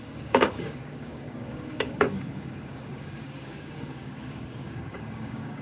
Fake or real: fake